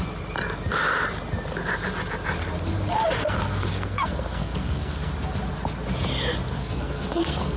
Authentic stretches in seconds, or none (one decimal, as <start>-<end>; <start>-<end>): 0.0-3.2; 5.1-6.5